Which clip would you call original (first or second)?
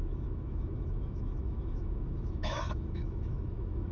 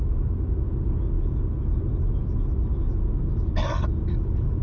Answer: second